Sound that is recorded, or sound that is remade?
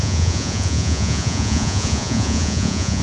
remade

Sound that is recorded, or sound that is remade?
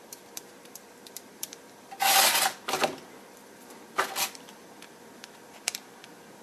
remade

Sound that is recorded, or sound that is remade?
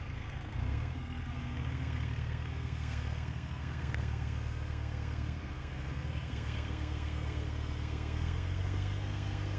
remade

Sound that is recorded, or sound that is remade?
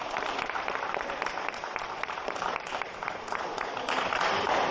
remade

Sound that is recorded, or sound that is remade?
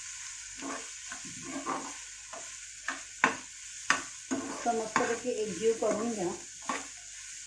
recorded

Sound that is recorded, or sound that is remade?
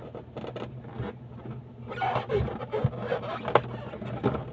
recorded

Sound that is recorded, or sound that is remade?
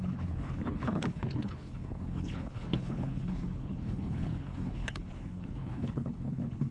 remade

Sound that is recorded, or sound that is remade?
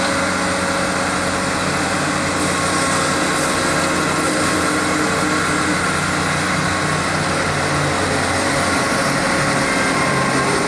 recorded